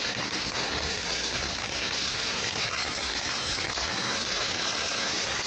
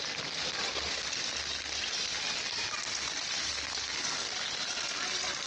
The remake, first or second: first